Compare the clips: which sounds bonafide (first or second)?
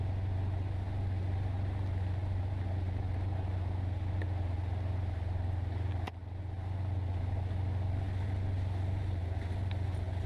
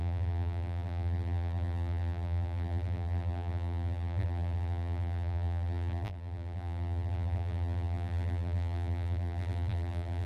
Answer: first